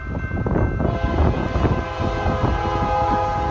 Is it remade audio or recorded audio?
recorded